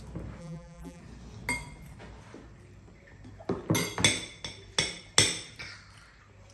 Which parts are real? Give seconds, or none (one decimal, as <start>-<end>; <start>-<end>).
0.0-0.4; 1.0-6.5